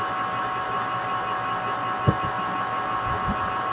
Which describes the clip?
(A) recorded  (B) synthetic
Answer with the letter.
A